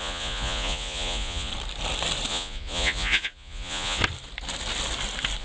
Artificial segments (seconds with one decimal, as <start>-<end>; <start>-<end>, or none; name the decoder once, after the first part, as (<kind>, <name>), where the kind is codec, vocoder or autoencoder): 0.0-1.5 (vocoder, Vocos); 2.3-4.0